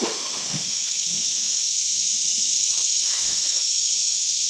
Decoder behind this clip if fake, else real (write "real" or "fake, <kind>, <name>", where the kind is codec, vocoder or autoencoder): fake, autoencoder, DAC-VAE